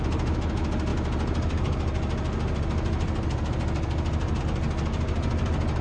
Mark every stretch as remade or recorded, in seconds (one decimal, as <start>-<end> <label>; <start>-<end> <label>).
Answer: 0.0-5.8 recorded